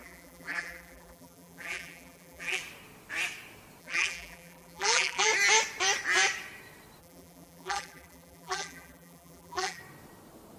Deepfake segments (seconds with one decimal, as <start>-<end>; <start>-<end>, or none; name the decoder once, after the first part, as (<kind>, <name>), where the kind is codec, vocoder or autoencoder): 0.0-2.6 (vocoder, BigVGAN v2); 3.8-5.3; 7.0-9.8